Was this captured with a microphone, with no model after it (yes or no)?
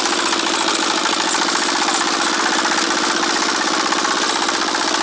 yes